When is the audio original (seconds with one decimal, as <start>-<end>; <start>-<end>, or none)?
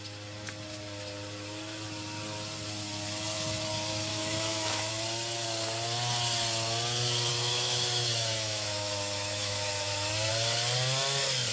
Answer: 0.0-4.1; 4.9-7.3; 10.3-11.5